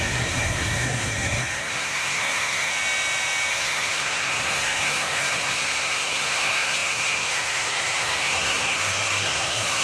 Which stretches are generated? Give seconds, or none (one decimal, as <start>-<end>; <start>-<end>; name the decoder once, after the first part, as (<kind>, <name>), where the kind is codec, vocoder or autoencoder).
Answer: 0.0-2.7 (codec, SNAC); 3.5-9.8